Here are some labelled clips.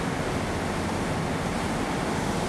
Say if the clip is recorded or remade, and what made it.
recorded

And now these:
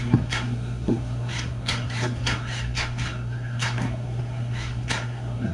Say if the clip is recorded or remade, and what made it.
remade, codec, SNAC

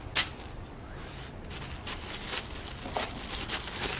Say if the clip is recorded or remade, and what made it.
recorded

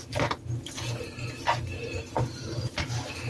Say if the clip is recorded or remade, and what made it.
recorded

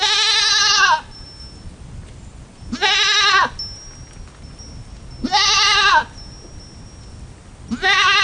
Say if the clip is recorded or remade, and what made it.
recorded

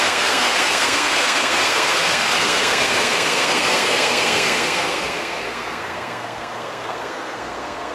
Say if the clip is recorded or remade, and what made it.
remade, codec, SNAC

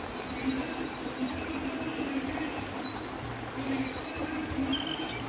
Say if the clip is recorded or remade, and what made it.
recorded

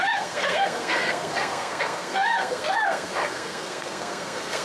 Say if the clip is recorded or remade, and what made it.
remade, codec, SNAC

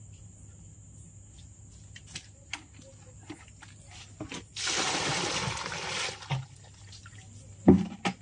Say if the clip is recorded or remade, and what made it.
recorded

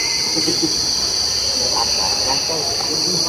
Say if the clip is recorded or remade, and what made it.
recorded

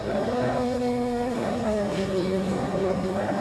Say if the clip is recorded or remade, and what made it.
remade, codec, SNAC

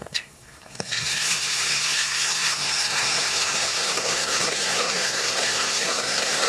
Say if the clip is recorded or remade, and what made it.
remade, codec, SNAC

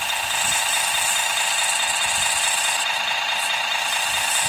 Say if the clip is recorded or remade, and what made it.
recorded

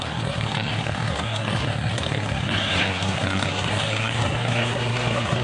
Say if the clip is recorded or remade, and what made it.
remade, codec, SNAC